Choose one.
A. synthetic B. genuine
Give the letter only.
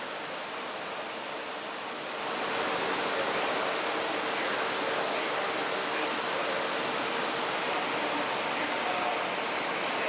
B